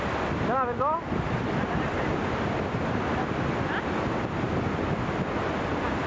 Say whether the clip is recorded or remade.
recorded